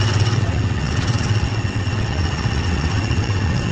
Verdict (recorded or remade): remade